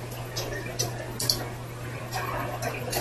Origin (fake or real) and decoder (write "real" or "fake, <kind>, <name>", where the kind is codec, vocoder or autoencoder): real